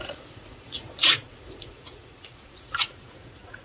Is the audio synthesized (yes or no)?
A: yes